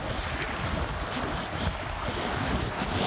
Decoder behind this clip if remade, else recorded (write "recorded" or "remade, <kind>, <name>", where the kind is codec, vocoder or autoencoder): recorded